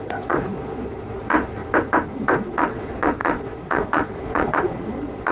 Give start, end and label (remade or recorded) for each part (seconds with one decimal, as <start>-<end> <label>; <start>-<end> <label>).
0.0-1.6 remade; 1.6-2.4 recorded; 2.4-5.3 remade